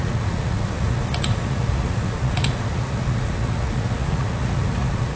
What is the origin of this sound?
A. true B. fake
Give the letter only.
B